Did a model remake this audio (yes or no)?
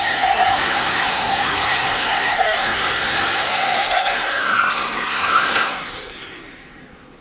yes